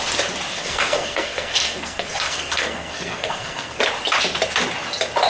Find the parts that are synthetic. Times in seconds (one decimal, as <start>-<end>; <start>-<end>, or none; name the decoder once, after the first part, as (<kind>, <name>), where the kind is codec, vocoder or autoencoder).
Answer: 0.6-3.8 (codec, SNAC)